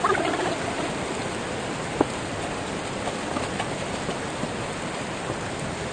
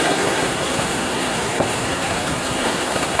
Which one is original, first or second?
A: first